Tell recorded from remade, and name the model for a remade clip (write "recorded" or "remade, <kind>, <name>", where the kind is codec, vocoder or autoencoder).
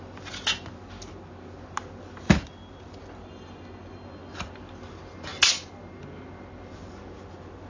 recorded